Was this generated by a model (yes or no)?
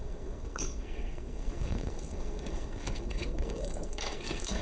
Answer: yes